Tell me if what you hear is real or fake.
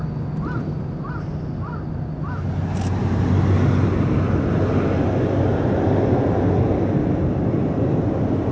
real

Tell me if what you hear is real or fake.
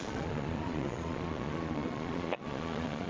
fake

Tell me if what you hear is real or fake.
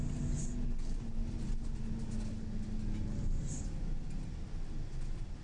real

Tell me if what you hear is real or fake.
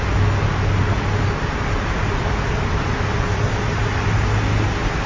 real